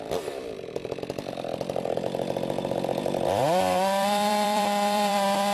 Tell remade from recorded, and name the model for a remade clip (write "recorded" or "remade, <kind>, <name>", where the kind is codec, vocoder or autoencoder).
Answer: remade, vocoder, BigVGAN v2